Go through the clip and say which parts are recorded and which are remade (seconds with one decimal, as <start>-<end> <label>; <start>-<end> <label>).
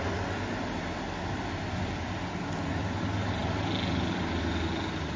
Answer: 0.0-5.2 recorded